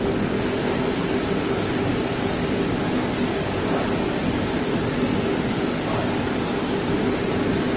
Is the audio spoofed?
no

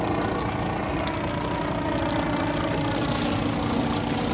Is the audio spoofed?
no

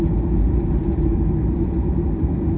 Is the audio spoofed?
no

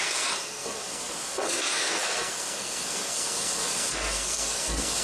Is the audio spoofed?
yes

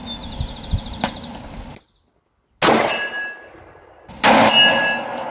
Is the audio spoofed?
no